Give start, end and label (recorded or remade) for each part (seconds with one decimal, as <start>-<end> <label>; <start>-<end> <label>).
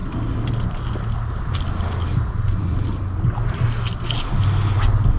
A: 0.0-2.1 recorded; 2.1-3.0 remade; 3.0-5.2 recorded